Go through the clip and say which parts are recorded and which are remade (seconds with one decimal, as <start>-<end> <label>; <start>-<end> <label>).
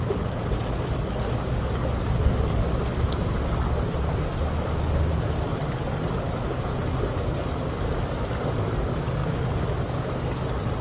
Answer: 0.0-9.2 recorded; 9.2-10.2 remade; 10.2-10.8 recorded